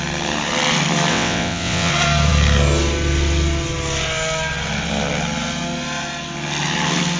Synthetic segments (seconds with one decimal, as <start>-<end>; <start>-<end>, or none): 1.1-1.9